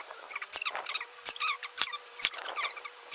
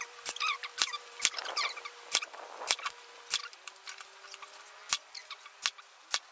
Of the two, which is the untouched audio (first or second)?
second